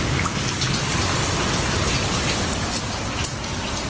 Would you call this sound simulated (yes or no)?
no